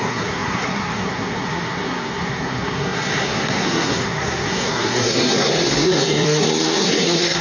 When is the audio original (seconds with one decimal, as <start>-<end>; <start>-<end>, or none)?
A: none